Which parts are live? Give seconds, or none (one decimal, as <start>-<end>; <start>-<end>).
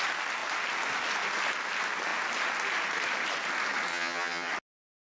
0.0-3.9; 4.5-5.0